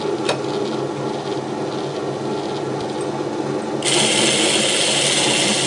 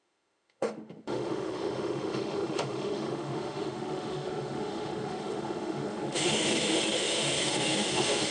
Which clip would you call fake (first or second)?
second